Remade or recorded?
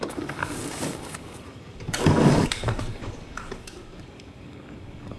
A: remade